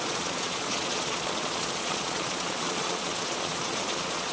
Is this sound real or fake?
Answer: fake